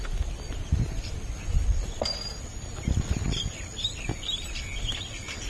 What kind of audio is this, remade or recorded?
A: recorded